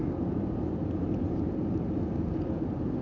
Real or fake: real